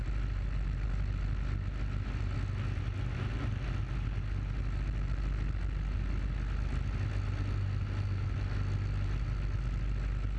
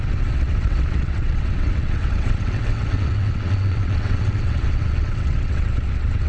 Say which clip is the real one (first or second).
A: first